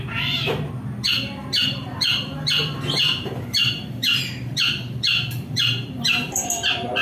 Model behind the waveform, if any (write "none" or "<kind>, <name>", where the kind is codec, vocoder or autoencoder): vocoder, BigVGAN v2